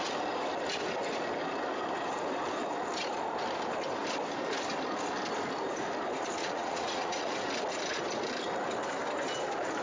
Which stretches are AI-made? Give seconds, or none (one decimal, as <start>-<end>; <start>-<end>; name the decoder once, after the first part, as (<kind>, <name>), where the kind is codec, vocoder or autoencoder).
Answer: 6.4-7.3 (vocoder, Vocos)